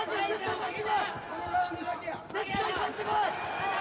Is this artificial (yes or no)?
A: no